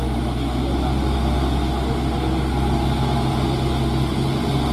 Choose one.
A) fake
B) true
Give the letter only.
B